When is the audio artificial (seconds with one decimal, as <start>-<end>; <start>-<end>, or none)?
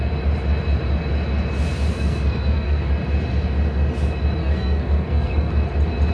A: 1.9-2.9; 4.4-5.5